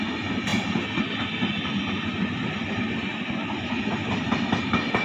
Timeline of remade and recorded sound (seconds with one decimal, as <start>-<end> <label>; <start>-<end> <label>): 0.0-5.0 recorded